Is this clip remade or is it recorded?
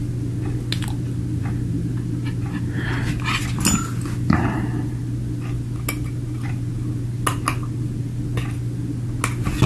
recorded